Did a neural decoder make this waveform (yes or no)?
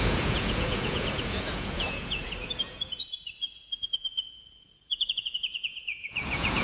yes